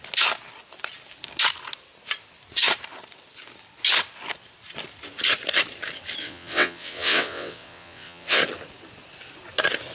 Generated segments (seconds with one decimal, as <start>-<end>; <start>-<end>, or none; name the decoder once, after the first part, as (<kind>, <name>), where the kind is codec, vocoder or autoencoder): 6.2-8.4 (vocoder, WaveNeXt)

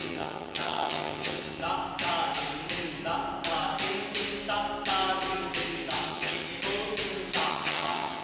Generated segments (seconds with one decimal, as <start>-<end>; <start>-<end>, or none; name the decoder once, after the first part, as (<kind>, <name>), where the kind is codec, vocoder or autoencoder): 0.0-1.6 (vocoder, HiFi-GAN); 6.1-6.5; 7.5-8.2

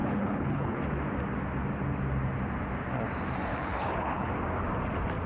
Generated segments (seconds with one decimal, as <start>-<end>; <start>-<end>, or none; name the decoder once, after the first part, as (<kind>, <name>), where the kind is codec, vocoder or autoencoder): 0.0-0.8 (codec, HILCodec); 3.5-4.3